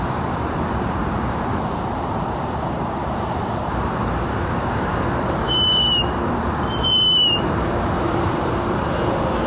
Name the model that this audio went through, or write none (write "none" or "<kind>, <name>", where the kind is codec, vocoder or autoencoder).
vocoder, BigVGAN v2